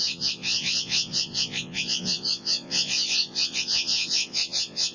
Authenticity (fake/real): fake